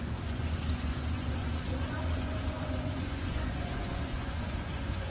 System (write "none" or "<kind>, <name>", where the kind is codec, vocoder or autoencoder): vocoder, Vocos